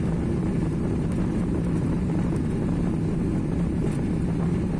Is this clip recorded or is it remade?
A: remade